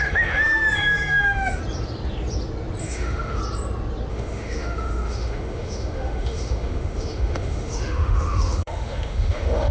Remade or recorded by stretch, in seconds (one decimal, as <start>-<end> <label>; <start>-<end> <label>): 0.0-1.6 remade; 1.6-2.8 recorded; 2.8-3.4 remade; 3.4-4.1 recorded; 4.1-9.7 remade